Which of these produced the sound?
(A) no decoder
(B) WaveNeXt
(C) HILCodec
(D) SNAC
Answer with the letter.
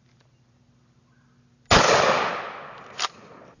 A